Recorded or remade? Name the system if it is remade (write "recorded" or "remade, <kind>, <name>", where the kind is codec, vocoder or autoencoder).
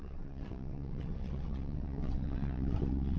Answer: remade, vocoder, WaveNeXt